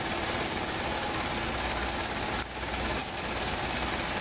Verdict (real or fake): real